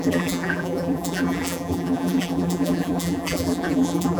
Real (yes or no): no